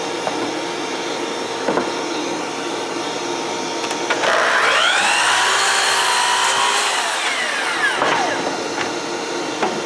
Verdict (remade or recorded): recorded